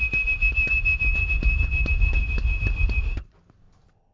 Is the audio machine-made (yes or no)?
no